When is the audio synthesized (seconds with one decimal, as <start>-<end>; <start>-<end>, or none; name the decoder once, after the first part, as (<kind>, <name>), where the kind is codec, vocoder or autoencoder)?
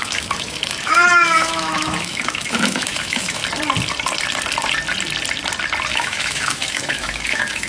0.0-3.4 (autoencoder, DAC-VAE); 5.9-7.7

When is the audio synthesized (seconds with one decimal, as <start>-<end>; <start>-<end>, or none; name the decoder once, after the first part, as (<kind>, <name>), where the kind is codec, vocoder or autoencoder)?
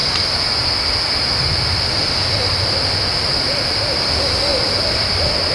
none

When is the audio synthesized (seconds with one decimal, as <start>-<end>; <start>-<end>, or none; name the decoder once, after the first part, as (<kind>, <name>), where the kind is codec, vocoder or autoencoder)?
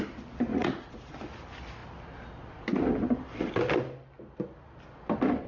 0.5-1.1 (vocoder, Vocos)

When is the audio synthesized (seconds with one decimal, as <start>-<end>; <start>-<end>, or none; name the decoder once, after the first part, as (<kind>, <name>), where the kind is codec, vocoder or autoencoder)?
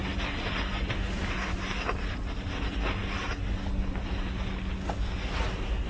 none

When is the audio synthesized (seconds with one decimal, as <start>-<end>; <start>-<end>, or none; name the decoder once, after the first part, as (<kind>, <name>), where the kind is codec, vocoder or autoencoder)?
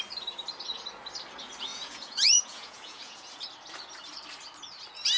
1.7-3.4 (vocoder, Vocos)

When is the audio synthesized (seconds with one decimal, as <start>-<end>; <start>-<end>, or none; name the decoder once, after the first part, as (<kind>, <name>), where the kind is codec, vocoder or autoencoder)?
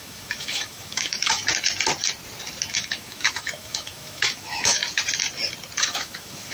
0.0-1.4 (autoencoder, DAC-VAE); 2.7-4.8; 5.8-6.5